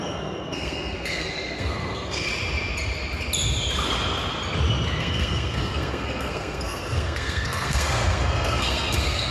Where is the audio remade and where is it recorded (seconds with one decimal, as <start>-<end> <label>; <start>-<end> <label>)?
0.0-2.3 remade; 2.3-5.0 recorded; 5.0-9.3 remade